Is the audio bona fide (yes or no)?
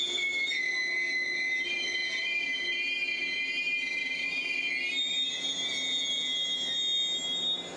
yes